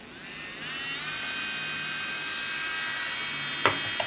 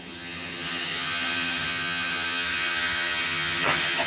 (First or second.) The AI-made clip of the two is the second